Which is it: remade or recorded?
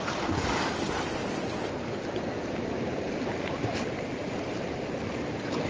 recorded